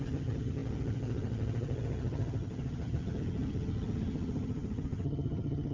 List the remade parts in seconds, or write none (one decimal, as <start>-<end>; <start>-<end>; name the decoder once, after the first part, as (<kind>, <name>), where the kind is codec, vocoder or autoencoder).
0.0-5.7 (vocoder, HiFi-GAN)